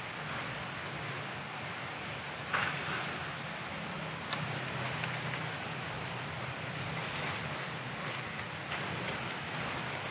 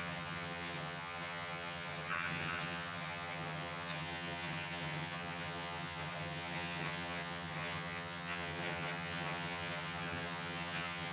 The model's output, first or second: second